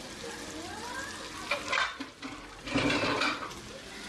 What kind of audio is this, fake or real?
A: real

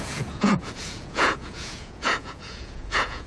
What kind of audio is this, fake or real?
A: fake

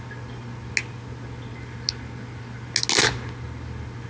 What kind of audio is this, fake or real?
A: real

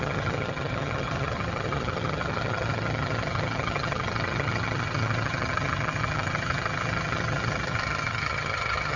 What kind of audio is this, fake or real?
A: fake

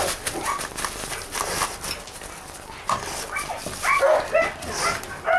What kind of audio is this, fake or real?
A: real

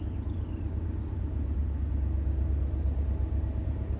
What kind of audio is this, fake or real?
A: real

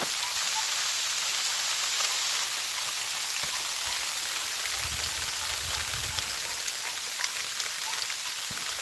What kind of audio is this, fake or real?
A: real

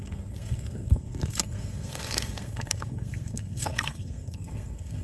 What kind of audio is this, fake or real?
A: fake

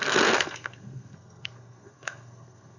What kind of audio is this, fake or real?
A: fake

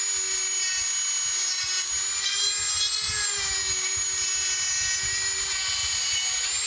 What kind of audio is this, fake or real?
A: real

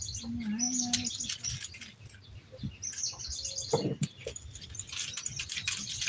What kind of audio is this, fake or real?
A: real